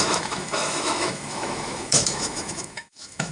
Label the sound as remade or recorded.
remade